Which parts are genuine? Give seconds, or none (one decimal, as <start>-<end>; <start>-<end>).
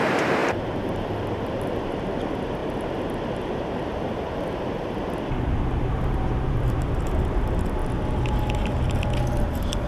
2.6-6.5; 7.8-9.9